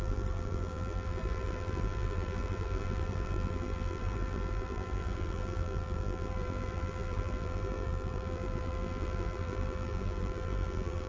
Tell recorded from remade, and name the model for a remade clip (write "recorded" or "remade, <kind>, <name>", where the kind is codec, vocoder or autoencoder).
remade, vocoder, BigVGAN v2